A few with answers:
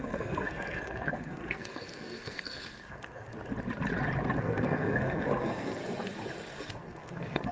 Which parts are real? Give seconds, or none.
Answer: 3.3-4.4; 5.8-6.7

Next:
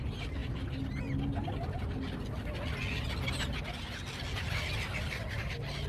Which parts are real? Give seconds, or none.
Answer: 0.0-5.9

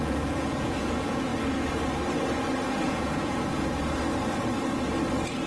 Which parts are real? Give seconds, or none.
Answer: 1.3-2.8; 3.8-5.5

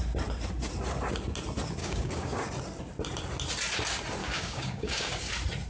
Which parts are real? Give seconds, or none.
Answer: 0.0-1.8; 2.5-4.2; 5.3-5.7